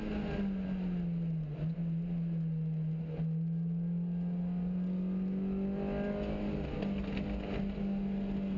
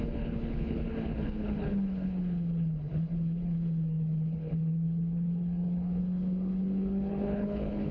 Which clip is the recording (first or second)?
first